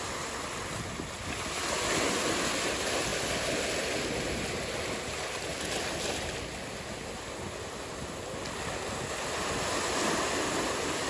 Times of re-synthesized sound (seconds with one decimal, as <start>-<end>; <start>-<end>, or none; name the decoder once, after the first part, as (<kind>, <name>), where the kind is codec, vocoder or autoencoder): none